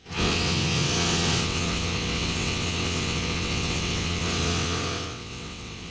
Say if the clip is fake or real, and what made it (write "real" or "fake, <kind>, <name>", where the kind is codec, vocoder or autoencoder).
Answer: fake, vocoder, WaveNeXt